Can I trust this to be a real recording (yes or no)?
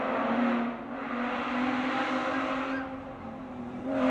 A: yes